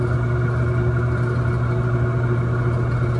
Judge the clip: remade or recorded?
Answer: recorded